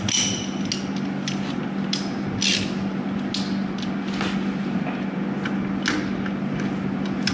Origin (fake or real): real